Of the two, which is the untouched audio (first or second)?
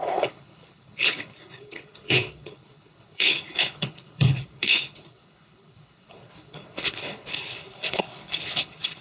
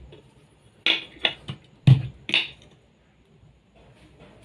second